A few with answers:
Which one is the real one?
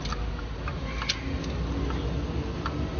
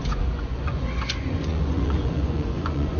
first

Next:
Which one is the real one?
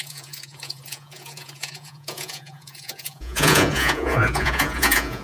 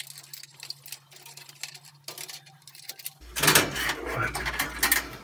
second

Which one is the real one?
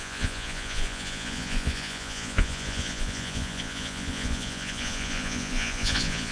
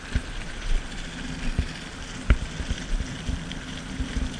second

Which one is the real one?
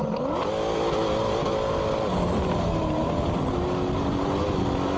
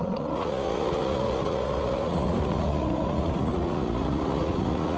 first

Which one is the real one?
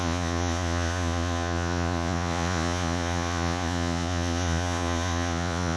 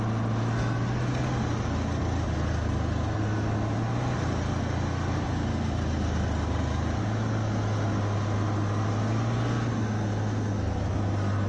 second